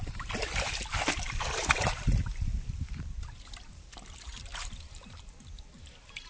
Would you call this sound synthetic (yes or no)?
no